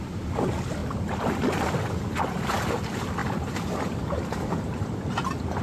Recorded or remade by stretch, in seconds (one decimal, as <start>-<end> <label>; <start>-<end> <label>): 0.0-3.2 recorded; 3.2-4.0 remade; 4.0-5.6 recorded